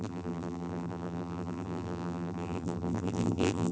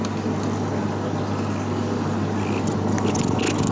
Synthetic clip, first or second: first